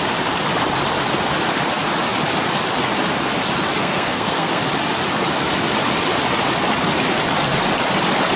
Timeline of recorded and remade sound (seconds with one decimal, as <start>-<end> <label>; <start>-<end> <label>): 0.0-3.8 recorded; 3.8-4.6 remade; 4.6-8.4 recorded